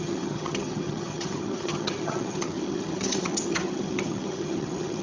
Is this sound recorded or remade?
remade